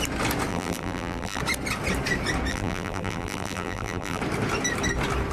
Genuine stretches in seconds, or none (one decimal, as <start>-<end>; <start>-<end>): 0.0-0.5; 1.4-2.5; 4.2-5.3